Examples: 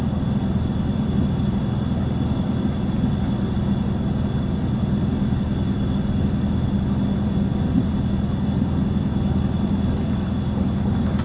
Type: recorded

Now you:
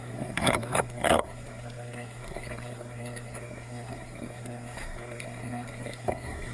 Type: remade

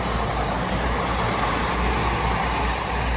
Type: recorded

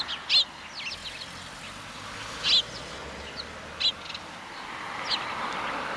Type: recorded